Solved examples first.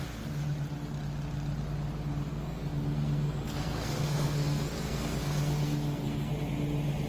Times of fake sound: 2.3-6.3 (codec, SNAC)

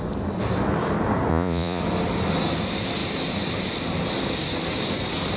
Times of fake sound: 1.3-1.8 (vocoder, Vocos)

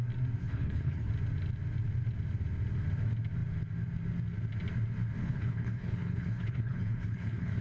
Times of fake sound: 0.4-1.1 (codec, HILCodec); 5.2-7.6

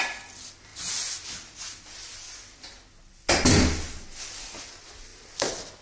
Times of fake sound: none